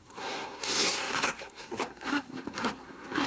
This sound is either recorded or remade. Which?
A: remade